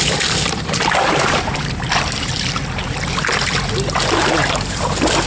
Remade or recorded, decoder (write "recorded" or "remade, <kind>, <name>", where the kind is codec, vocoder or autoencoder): remade, vocoder, BigVGAN v2